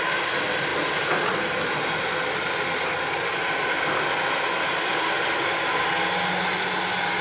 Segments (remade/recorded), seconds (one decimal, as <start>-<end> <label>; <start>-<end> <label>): 0.0-7.2 recorded